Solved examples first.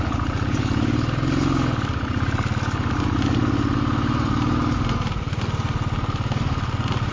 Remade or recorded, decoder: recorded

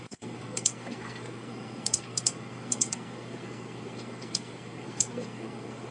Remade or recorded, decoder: remade, codec, SNAC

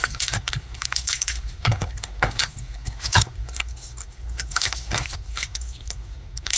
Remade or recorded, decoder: remade, codec, SNAC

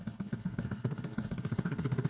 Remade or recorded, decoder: remade, codec, SNAC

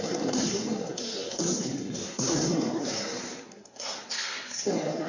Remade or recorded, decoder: remade, codec, SNAC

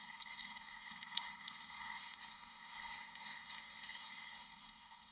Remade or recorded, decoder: remade, codec, SNAC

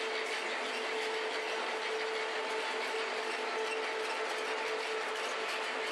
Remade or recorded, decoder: recorded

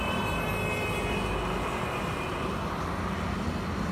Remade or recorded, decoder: recorded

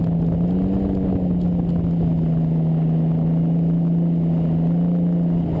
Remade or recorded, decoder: recorded